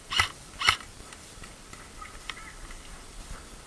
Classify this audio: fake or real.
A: fake